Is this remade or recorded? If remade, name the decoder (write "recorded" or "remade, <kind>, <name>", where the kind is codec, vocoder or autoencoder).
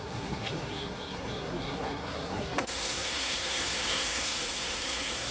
remade, codec, SNAC